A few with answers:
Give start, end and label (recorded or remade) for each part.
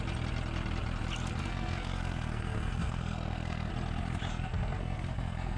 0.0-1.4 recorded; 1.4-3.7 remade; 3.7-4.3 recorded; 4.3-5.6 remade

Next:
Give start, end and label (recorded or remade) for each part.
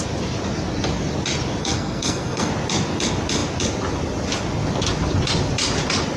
0.0-1.6 recorded; 1.6-2.5 remade; 2.5-6.2 recorded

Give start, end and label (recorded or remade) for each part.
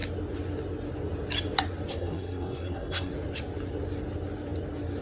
0.0-1.9 recorded; 1.9-3.1 remade; 3.1-5.0 recorded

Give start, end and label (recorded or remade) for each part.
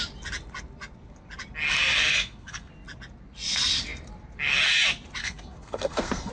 0.0-2.1 recorded; 2.1-2.7 remade; 2.7-5.2 recorded; 5.2-6.3 remade